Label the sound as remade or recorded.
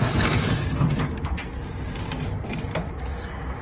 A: recorded